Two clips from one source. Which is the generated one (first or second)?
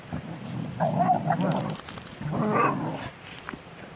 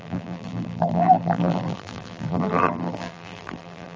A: second